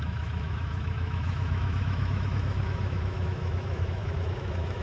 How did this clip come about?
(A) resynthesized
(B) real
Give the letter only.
A